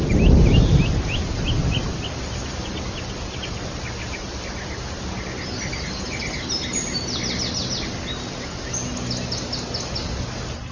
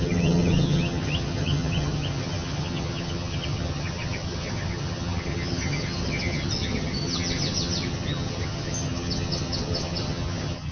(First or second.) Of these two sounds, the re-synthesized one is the second